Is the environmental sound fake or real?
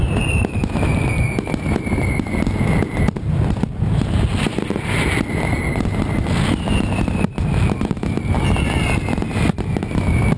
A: real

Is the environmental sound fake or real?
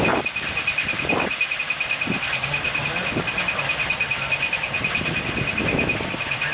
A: real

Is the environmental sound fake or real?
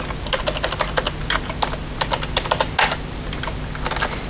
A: real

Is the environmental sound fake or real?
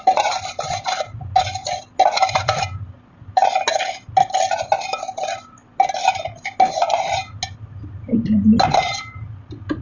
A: real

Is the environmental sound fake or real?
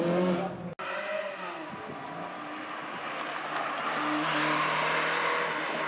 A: real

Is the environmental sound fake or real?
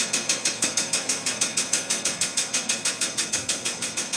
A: fake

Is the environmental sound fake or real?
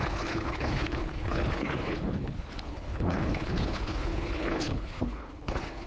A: fake